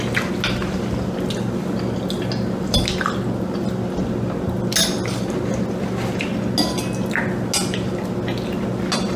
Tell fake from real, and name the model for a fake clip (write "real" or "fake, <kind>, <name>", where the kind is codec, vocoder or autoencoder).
real